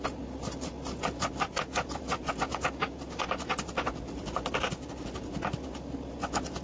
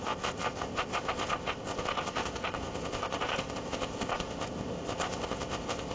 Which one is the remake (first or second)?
second